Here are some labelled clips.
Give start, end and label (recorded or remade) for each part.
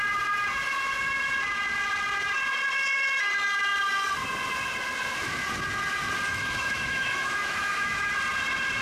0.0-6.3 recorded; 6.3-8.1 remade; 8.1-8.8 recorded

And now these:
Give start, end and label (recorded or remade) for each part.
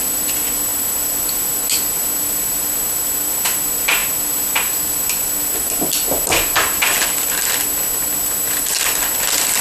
0.0-9.6 recorded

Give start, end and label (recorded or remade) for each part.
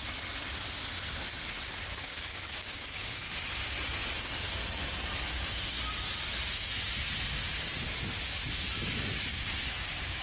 0.0-1.9 recorded; 1.9-3.1 remade; 3.1-9.3 recorded; 9.3-10.2 remade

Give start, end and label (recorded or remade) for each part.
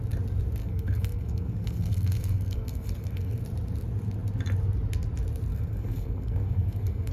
0.0-0.6 recorded; 0.6-3.4 remade; 3.4-5.5 recorded; 5.5-7.1 remade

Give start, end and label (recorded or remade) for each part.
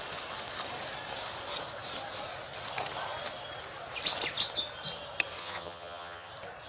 0.0-5.4 recorded; 5.4-6.3 remade; 6.3-6.7 recorded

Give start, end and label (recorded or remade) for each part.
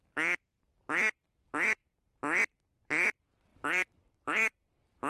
0.0-0.7 remade; 0.7-1.4 recorded; 1.4-1.8 remade; 1.8-3.1 recorded; 3.1-5.1 remade